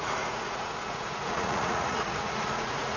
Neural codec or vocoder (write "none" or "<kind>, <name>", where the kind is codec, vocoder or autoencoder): vocoder, Vocos